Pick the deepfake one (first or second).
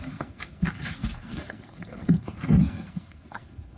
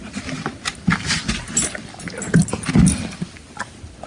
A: first